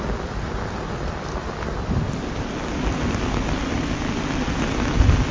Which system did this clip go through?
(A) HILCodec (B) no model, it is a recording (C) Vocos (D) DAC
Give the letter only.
B